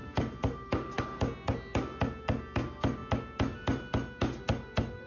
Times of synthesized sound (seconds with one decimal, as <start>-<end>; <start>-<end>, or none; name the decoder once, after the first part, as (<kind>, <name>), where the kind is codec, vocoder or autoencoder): 0.0-1.0 (vocoder, BigVGAN v2)